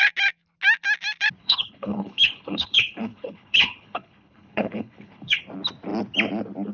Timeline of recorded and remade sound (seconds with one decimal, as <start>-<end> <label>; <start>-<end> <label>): 0.0-1.4 recorded; 1.4-5.4 remade; 5.4-6.7 recorded